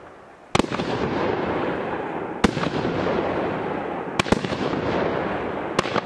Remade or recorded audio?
recorded